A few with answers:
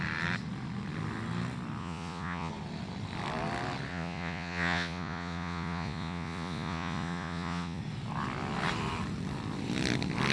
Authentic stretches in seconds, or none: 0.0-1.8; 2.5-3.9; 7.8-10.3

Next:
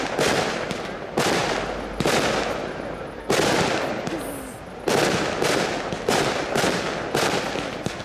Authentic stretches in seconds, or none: 0.0-8.0

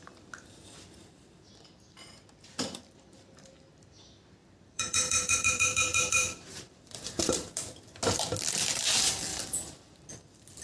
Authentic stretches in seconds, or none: 0.0-4.4; 7.3-9.3; 10.1-10.6

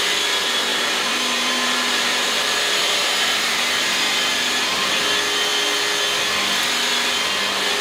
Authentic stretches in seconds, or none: 0.0-0.7; 5.0-7.8

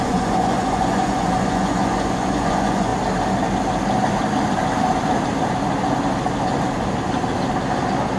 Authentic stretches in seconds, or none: 2.9-8.2

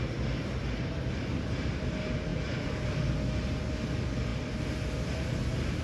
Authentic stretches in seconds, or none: 0.0-5.8

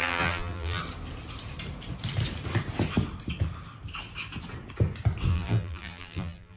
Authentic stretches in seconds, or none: 0.8-5.3

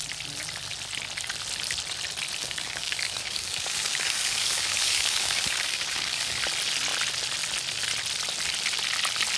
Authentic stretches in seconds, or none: 0.0-2.4; 6.4-9.4